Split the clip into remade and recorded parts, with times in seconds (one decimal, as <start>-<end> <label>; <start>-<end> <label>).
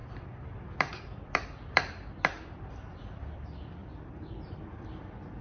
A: 0.0-3.2 remade; 3.2-3.8 recorded; 3.8-5.4 remade